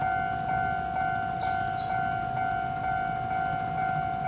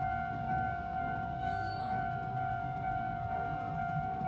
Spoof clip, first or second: second